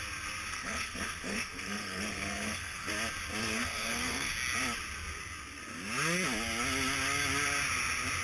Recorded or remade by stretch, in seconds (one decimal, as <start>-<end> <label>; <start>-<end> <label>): 0.0-0.5 recorded; 0.5-2.9 remade; 2.9-3.4 recorded; 3.4-4.3 remade; 4.3-8.2 recorded